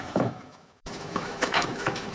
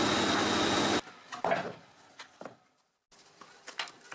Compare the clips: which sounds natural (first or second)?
second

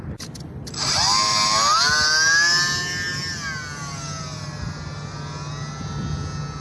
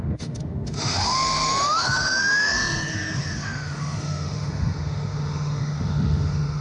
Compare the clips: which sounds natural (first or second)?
first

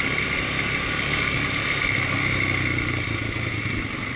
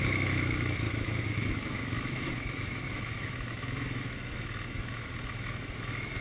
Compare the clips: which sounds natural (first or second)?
first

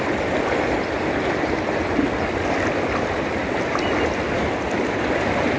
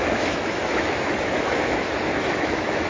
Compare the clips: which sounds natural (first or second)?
first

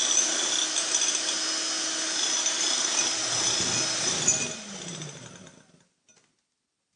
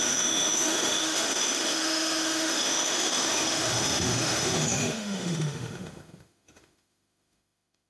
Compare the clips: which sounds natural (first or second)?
first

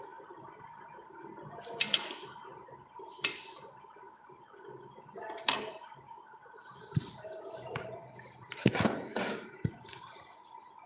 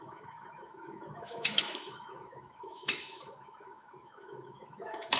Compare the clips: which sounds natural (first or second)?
first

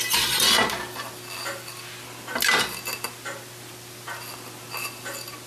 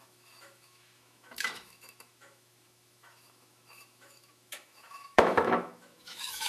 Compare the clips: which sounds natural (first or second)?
first